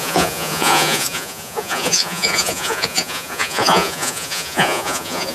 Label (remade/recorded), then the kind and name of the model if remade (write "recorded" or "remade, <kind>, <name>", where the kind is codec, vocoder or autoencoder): remade, vocoder, Vocos